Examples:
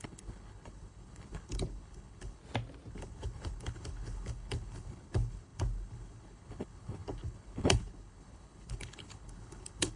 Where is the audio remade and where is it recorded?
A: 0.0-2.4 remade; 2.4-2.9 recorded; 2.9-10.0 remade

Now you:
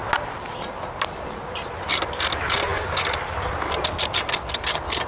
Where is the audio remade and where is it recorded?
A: 0.0-5.1 recorded

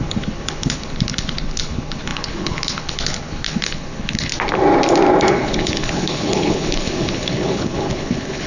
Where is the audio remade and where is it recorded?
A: 0.0-4.3 remade; 4.3-5.3 recorded; 5.3-8.5 remade

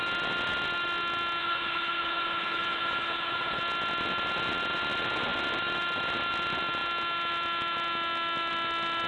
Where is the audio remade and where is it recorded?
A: 0.0-1.4 recorded; 1.4-3.6 remade; 3.6-9.1 recorded

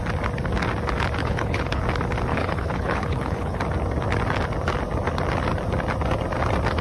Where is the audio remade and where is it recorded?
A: 0.0-1.2 recorded; 1.2-1.8 remade; 1.8-2.3 recorded; 2.3-3.6 remade; 3.6-6.8 recorded

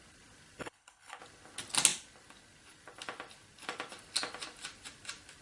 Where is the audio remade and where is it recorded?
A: 0.0-0.6 recorded; 0.6-1.2 remade; 1.2-5.4 recorded

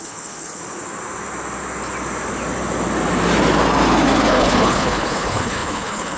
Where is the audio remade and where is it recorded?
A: 0.0-0.6 remade; 0.6-4.3 recorded; 4.3-6.2 remade

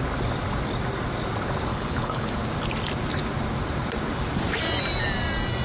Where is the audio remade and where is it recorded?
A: 0.0-1.7 recorded; 1.7-2.3 remade; 2.3-5.6 recorded